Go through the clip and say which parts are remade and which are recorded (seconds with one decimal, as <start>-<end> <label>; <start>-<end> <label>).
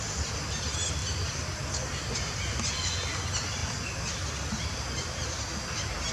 0.0-1.0 recorded; 1.0-2.1 remade; 2.1-6.1 recorded